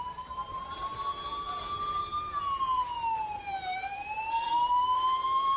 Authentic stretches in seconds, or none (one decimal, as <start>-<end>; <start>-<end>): 0.9-4.3